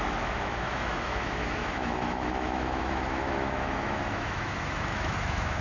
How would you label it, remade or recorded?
remade